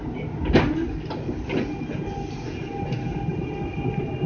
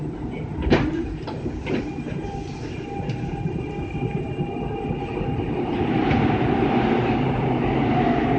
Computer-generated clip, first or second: second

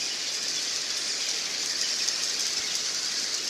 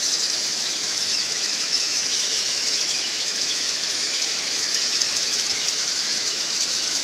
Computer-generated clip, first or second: second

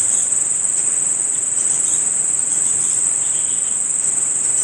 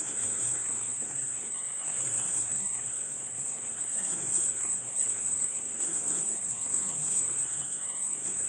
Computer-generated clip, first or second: second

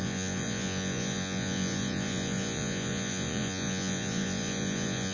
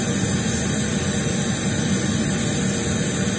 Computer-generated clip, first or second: first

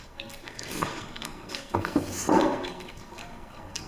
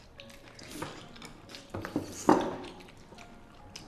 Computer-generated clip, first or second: first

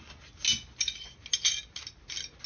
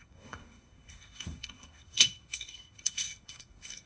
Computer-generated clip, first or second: second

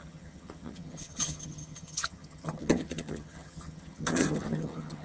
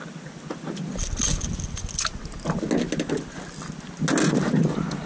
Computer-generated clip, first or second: first